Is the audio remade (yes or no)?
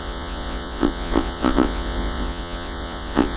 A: yes